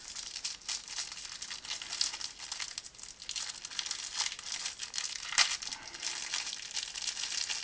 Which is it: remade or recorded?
recorded